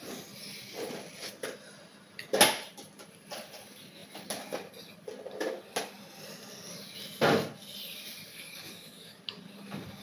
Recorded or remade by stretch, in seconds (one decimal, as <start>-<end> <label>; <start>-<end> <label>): 0.0-8.3 recorded; 8.3-9.2 remade; 9.2-10.0 recorded